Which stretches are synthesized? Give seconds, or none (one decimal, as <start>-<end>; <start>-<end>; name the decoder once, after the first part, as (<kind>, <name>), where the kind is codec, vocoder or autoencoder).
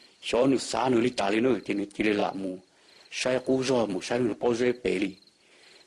0.0-5.9 (vocoder, BigVGAN v2)